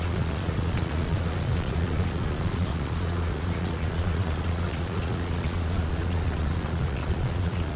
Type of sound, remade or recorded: remade